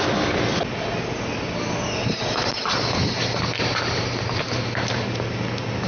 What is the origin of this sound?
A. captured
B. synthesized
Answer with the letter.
A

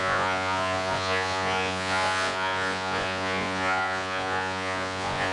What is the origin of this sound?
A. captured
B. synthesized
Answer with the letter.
B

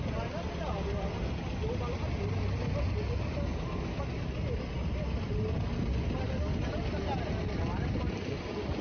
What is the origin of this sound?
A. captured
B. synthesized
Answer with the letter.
A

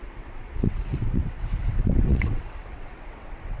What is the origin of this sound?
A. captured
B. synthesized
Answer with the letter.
B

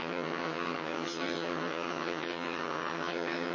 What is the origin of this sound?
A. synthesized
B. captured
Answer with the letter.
A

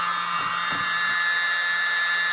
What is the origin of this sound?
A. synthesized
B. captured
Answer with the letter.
B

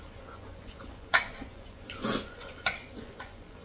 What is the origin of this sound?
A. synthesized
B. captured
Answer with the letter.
A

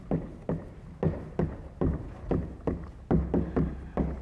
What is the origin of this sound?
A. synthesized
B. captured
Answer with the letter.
B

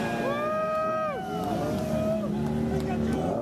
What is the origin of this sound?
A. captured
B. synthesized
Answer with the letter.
A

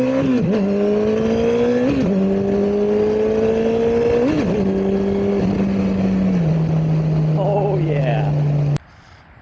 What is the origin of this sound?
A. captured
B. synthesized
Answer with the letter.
A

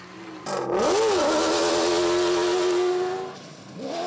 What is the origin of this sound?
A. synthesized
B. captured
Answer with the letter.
B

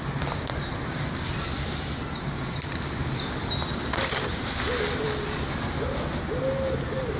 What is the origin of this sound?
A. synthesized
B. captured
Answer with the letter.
B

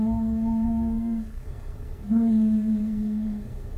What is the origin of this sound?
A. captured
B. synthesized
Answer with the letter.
B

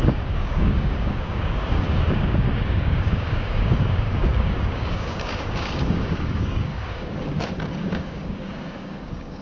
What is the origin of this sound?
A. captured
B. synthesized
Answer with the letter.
B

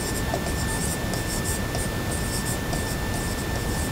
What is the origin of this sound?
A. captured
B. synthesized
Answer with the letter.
A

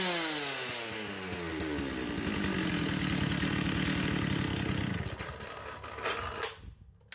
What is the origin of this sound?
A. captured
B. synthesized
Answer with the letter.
A